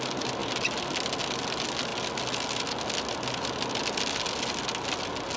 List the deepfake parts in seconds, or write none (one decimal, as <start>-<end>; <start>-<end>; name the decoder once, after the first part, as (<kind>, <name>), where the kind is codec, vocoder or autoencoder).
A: none